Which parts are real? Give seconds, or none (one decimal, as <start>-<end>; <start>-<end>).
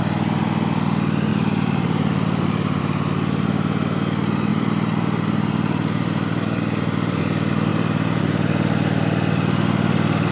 0.0-1.3; 2.8-4.5; 7.2-7.7; 8.2-10.3